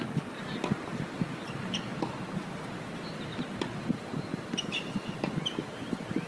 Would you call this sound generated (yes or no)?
no